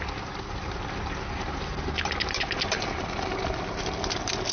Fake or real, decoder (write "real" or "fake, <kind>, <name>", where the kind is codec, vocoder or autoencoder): real